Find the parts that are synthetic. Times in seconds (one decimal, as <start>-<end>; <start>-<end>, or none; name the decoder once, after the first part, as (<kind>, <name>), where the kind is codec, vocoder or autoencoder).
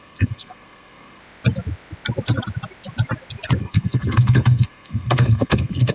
0.0-1.2 (codec, SNAC); 3.6-5.9